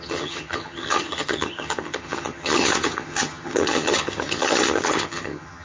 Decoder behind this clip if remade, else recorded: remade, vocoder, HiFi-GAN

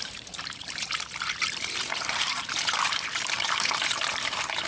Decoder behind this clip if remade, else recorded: remade, vocoder, BigVGAN v2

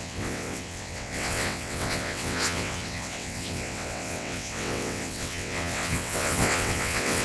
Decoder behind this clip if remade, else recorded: remade, vocoder, WaveNeXt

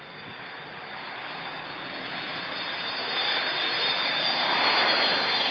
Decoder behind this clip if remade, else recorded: recorded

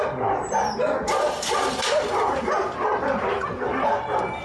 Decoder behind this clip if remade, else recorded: remade, vocoder, BigVGAN v2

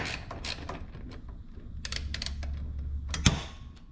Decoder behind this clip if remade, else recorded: recorded